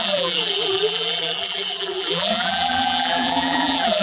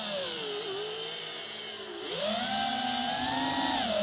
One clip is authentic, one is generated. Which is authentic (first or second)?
second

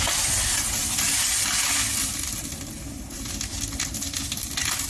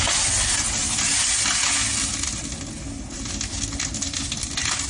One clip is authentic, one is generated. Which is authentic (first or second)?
second